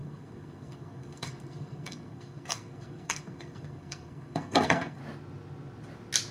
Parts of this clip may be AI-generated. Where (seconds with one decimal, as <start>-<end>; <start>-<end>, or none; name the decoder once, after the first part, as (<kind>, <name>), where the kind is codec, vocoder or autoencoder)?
0.0-5.0 (codec, SNAC)